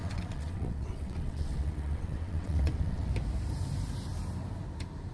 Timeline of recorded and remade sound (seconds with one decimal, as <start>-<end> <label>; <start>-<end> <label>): 0.0-3.1 remade; 3.1-5.1 recorded